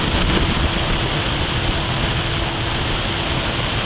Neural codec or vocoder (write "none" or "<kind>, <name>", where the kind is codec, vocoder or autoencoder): none